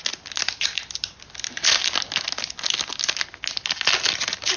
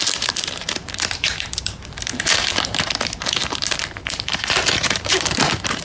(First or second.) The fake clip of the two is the second